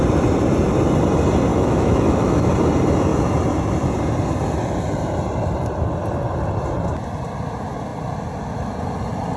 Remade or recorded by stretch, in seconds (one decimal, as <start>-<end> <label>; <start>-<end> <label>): 0.0-1.5 recorded; 1.5-2.5 remade; 2.5-9.4 recorded